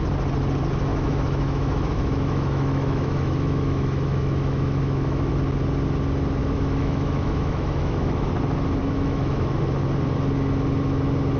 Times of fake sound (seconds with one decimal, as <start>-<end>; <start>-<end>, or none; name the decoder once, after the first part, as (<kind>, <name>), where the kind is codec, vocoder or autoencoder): 0.9-5.3 (autoencoder, DAC-VAE); 6.4-8.3; 8.8-9.6